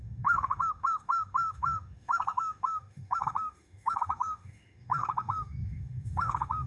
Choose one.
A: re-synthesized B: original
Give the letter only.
A